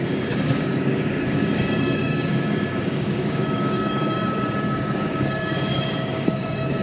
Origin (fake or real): fake